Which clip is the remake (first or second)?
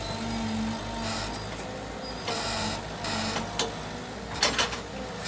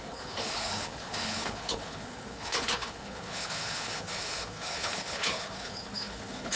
second